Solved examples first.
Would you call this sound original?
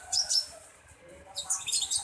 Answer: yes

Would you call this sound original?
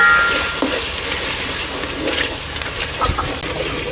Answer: yes